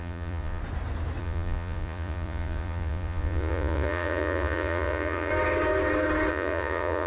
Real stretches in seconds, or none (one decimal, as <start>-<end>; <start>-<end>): 0.6-1.2; 5.3-6.3